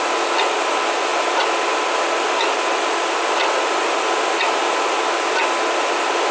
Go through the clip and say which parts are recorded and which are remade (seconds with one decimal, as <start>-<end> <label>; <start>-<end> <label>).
0.0-6.3 recorded